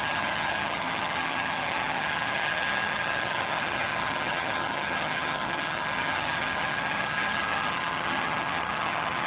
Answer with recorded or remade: remade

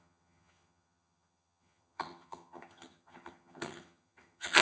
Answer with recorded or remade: remade